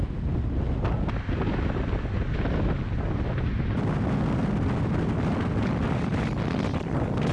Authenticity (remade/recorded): recorded